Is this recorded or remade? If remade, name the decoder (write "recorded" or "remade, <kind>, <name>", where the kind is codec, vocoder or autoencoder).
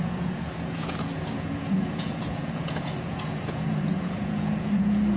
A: remade, vocoder, Vocos